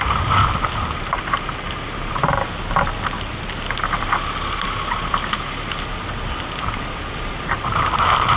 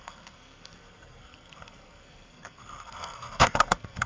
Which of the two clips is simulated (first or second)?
second